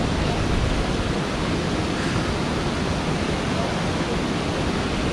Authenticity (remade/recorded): recorded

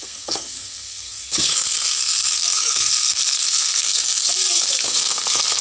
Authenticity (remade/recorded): remade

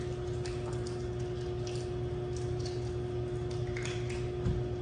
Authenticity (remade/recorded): recorded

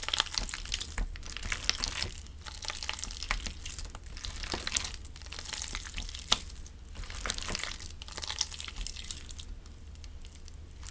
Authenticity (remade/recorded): recorded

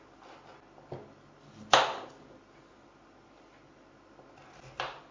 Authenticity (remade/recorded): recorded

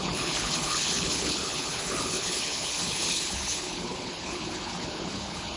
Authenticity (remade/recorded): remade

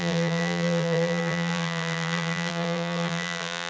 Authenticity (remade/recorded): remade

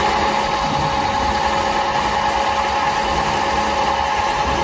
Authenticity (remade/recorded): recorded